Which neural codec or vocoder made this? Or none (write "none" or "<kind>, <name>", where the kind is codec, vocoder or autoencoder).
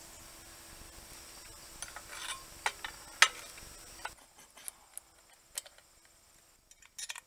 none